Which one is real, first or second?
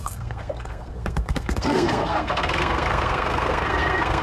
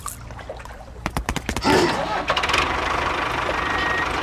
second